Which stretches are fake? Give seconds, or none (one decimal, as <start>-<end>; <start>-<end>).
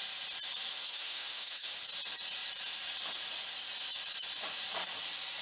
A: 0.7-1.8